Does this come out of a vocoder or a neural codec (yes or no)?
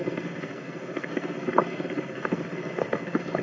yes